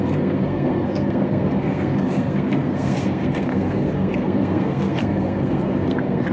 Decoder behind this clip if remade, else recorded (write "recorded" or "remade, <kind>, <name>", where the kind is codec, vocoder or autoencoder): remade, codec, SNAC